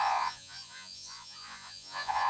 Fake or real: fake